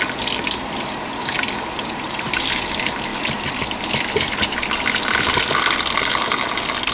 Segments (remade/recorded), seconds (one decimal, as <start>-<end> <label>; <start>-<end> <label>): 0.0-6.9 recorded